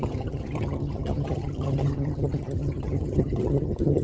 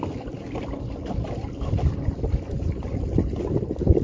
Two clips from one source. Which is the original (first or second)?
second